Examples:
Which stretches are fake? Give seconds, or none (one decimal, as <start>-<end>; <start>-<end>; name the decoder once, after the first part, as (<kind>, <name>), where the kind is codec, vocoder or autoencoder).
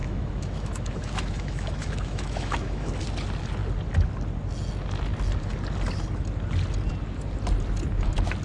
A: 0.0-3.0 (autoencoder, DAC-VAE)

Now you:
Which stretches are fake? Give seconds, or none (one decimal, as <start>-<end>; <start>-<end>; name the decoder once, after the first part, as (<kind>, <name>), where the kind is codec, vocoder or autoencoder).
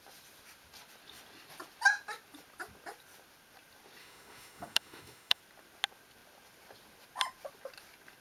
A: 4.0-5.4 (autoencoder, DAC-VAE)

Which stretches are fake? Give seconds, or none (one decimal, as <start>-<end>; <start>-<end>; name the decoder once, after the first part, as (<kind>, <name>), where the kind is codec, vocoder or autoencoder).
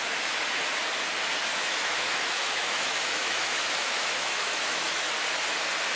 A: 1.5-5.1 (autoencoder, DAC-VAE)